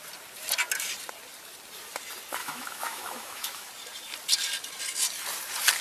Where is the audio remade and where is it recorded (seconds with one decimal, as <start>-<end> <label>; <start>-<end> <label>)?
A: 0.0-2.4 recorded; 2.4-3.7 remade; 3.7-5.8 recorded